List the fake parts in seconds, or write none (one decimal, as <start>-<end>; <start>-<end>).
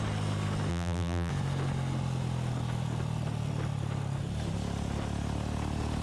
0.7-1.3